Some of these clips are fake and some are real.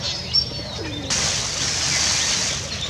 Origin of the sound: real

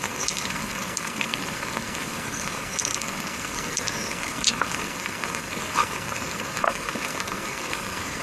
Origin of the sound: fake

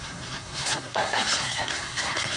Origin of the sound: fake